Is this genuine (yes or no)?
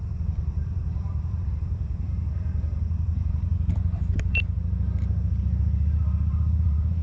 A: no